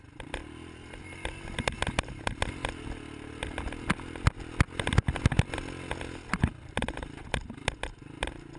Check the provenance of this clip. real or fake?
real